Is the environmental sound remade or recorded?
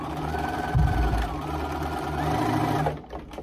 recorded